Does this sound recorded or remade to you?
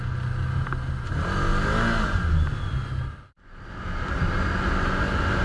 recorded